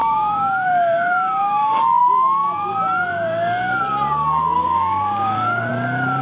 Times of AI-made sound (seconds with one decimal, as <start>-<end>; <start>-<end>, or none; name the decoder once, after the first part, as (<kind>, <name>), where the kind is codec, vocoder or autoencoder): 0.0-1.8 (codec, DAC); 4.6-5.7